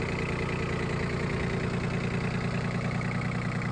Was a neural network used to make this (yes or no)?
no